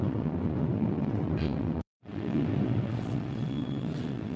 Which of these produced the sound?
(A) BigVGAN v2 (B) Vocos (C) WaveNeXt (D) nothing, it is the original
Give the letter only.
C